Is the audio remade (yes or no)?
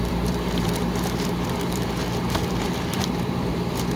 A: yes